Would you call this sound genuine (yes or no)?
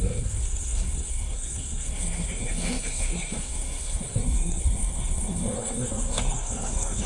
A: no